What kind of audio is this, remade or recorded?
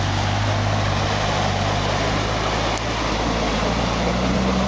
recorded